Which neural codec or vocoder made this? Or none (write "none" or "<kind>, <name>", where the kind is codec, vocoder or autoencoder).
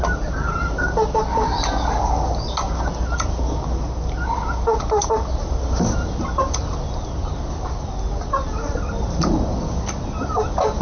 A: none